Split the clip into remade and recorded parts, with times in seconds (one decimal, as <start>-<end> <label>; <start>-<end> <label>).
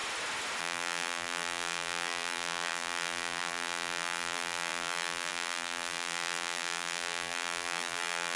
0.0-0.6 recorded; 0.6-8.4 remade